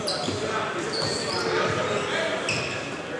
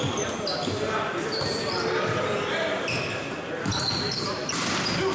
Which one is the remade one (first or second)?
first